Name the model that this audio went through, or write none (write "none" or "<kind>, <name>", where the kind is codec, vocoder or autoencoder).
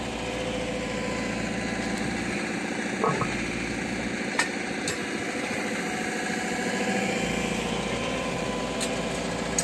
none